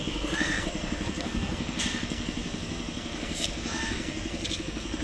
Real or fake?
fake